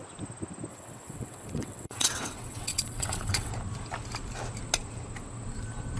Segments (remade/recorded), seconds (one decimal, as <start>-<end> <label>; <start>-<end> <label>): 0.0-0.7 recorded; 0.7-3.5 remade; 3.5-6.0 recorded